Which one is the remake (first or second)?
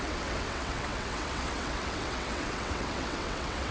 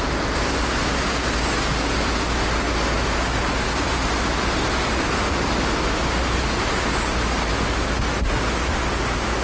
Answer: first